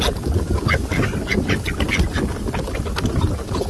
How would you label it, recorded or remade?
recorded